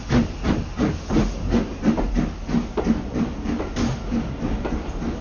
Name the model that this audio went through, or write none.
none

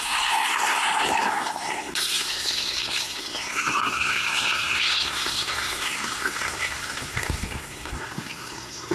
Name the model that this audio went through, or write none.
codec, SNAC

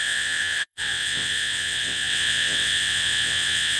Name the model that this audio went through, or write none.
vocoder, WaveNeXt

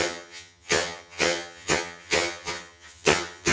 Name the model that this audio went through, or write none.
vocoder, HiFi-GAN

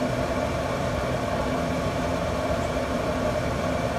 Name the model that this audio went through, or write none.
vocoder, BigVGAN v2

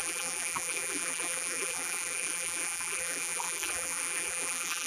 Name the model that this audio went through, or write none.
vocoder, BigVGAN v2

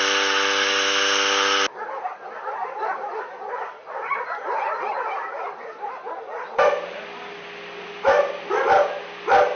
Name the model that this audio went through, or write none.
none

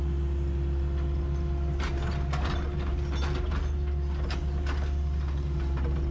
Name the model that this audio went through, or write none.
none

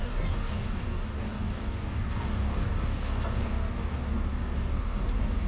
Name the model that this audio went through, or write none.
codec, DAC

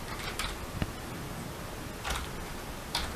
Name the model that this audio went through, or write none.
none